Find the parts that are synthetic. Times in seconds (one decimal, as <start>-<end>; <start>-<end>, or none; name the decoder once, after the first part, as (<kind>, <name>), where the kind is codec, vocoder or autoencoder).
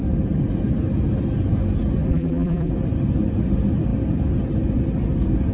2.1-2.7 (vocoder, BigVGAN v2)